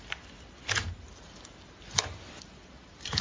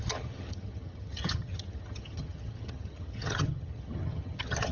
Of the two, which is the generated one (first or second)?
second